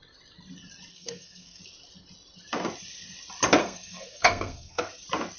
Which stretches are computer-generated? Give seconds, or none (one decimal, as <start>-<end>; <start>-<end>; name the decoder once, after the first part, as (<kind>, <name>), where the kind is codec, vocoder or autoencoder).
0.9-1.6 (codec, SNAC); 3.6-4.8